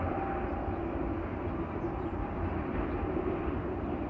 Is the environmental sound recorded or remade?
remade